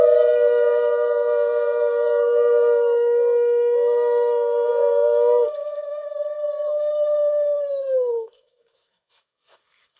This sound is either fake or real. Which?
fake